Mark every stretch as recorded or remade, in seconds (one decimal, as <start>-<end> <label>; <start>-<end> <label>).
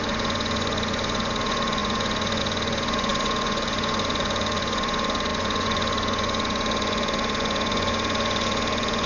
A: 0.0-9.1 remade